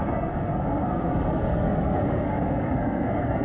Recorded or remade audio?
remade